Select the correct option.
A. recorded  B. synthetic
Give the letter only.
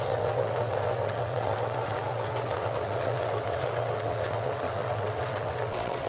B